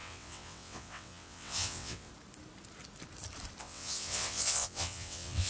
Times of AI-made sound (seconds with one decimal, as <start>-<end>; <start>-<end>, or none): 0.0-2.1; 3.6-5.5